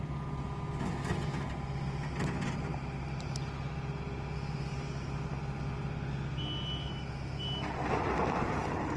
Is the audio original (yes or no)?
yes